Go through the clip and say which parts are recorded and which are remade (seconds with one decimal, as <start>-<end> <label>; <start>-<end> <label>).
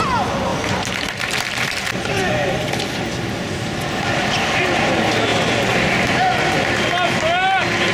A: 0.0-7.9 recorded